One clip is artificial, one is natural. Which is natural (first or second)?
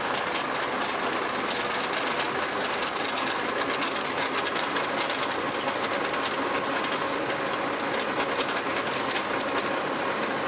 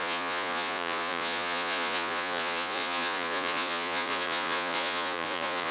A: first